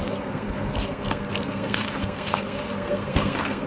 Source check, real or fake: fake